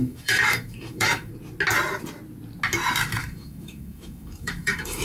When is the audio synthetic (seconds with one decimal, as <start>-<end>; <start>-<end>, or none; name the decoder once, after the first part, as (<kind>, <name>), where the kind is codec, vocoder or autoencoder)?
0.0-1.3 (autoencoder, DAC-VAE); 3.2-5.0